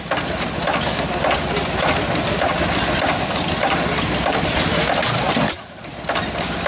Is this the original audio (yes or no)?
yes